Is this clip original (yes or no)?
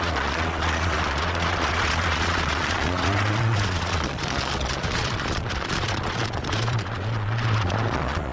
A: no